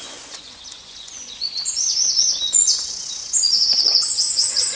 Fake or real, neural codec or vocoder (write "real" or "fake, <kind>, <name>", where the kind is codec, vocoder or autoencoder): fake, vocoder, Vocos